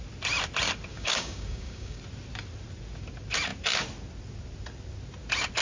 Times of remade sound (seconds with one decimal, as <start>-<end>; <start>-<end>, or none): 0.9-2.0